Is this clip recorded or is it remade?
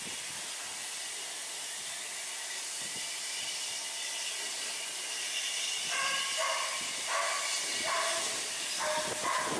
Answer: recorded